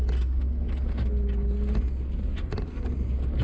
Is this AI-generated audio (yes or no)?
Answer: no